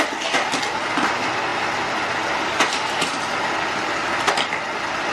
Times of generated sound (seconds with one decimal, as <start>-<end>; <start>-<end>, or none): none